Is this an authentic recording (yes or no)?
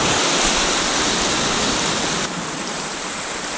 yes